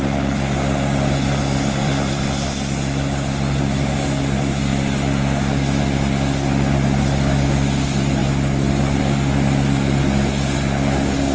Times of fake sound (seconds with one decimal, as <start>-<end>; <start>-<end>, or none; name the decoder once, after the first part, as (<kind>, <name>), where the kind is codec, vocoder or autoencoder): 1.4-2.2 (vocoder, BigVGAN v2); 8.2-9.0